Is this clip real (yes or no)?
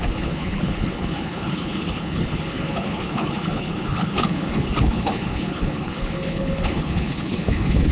no